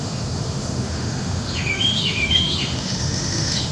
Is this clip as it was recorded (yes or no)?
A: no